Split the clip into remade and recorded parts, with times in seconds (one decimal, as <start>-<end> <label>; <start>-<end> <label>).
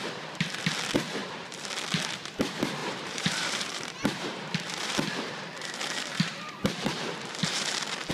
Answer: 0.0-1.2 recorded; 1.2-1.7 remade; 1.7-2.8 recorded; 2.8-8.1 remade